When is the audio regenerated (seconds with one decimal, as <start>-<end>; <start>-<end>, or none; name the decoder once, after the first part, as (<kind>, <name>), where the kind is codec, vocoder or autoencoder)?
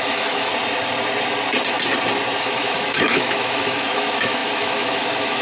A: 0.0-0.5 (autoencoder, DAC-VAE); 2.4-5.4